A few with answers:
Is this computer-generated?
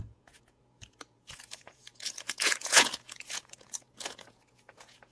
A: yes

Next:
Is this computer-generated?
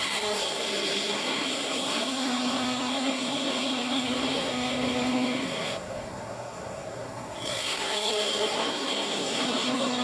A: yes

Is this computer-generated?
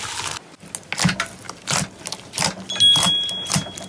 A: no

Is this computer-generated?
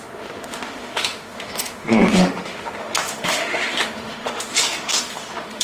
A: yes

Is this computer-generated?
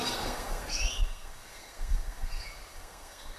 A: yes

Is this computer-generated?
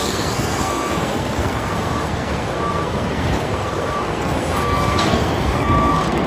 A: yes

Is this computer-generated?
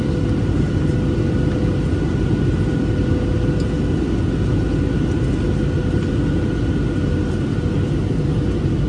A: no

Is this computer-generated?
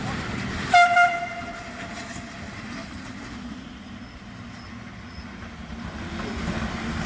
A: no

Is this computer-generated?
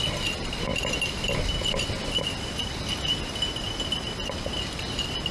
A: no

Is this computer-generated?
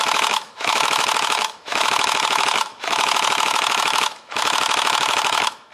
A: yes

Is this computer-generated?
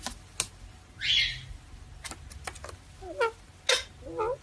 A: no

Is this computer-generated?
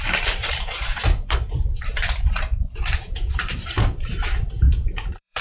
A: yes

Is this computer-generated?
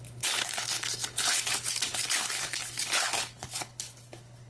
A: yes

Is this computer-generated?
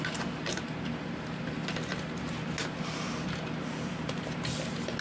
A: no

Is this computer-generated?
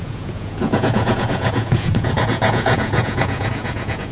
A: yes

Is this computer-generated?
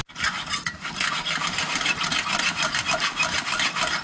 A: no